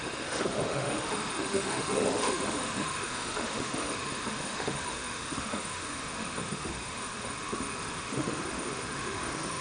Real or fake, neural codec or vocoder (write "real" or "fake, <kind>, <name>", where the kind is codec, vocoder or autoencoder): fake, autoencoder, DAC-VAE